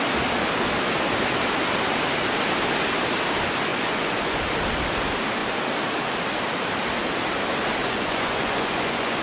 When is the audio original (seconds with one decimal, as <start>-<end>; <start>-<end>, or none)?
0.0-3.7; 4.4-7.8